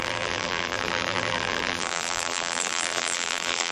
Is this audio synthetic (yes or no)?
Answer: yes